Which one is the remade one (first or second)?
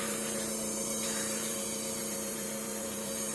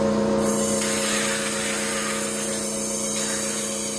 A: first